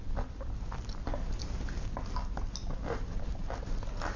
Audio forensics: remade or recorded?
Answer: recorded